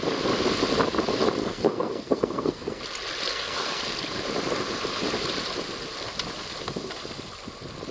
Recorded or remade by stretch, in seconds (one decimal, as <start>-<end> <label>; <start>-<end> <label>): 0.0-1.4 recorded; 1.4-2.8 remade; 2.8-3.3 recorded; 3.3-3.8 remade; 3.8-7.9 recorded